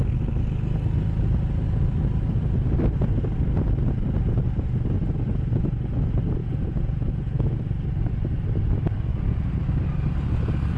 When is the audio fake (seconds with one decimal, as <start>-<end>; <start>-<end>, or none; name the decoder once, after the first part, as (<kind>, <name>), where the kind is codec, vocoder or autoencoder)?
6.4-7.6 (vocoder, Vocos); 9.1-9.6